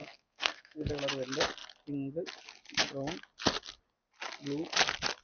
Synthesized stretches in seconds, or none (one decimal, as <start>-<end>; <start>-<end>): 0.0-0.9